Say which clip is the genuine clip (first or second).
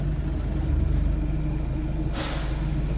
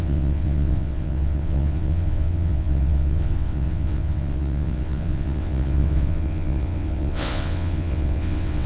first